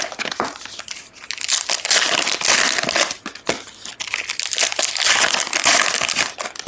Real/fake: real